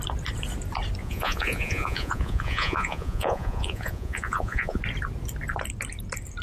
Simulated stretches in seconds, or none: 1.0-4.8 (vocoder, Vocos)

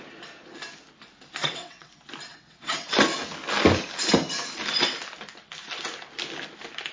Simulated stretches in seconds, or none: 1.4-1.9 (vocoder, WaveNeXt); 2.3-2.9

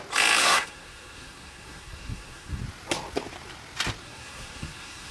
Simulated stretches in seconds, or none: 0.4-2.6 (codec, SNAC); 4.0-5.1

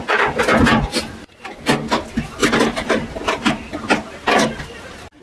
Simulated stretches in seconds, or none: none

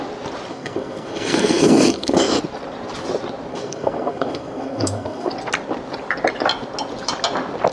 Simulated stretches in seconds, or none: 0.5-2.4 (codec, SNAC); 3.5-5.3

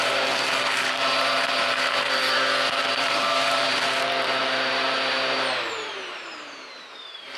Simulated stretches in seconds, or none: 0.0-3.7 (vocoder, BigVGAN v2); 4.4-7.4

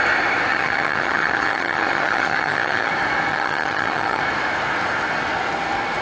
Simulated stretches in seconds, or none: 0.5-2.9 (vocoder, HiFi-GAN); 3.3-4.2